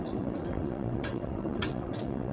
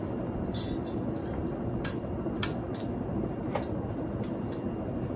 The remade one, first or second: first